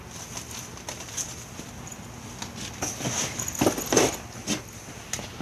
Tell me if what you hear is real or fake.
real